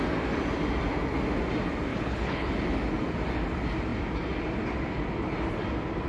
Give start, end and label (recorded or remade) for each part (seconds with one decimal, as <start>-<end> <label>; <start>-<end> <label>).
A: 0.0-1.9 recorded; 1.9-2.5 remade; 2.5-6.1 recorded